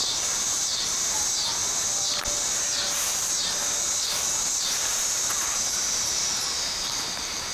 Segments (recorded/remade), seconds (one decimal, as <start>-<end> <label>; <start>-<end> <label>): 0.0-1.6 remade; 1.6-4.5 recorded; 4.5-7.5 remade